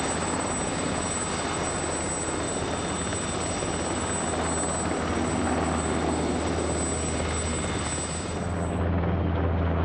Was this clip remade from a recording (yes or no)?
no